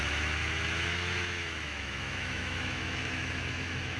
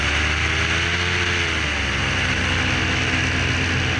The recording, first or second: second